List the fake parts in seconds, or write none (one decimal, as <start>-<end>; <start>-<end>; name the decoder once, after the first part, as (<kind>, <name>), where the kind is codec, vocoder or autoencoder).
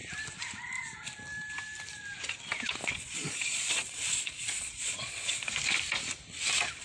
2.8-5.5 (vocoder, Vocos)